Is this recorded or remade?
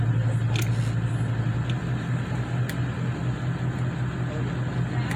recorded